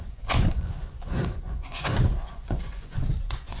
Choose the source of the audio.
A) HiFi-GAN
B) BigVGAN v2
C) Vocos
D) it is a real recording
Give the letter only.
C